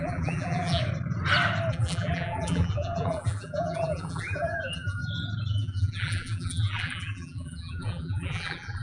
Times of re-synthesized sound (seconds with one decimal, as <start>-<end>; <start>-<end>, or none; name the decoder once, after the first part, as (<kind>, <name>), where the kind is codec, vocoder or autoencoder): 0.0-0.8 (vocoder, BigVGAN v2); 1.7-5.0; 5.5-8.8